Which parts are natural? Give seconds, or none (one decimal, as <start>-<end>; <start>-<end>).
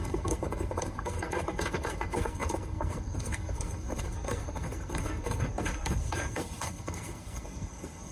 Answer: none